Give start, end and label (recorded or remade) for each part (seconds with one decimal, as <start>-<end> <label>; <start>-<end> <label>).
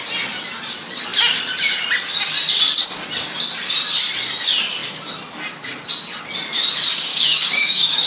0.0-7.1 recorded; 7.1-8.1 remade